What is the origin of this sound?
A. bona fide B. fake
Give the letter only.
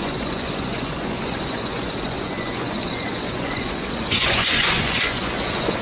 B